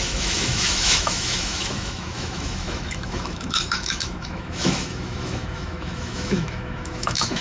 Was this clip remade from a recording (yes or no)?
yes